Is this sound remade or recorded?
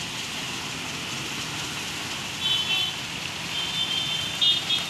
recorded